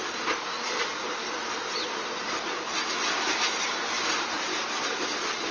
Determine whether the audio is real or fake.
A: real